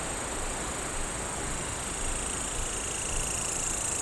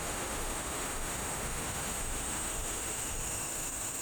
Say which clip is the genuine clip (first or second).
first